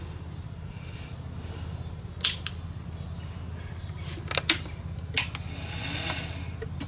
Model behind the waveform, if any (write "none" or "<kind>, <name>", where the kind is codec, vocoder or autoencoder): none